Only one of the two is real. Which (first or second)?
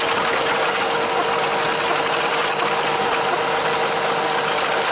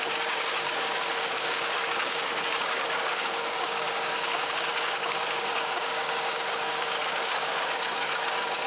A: first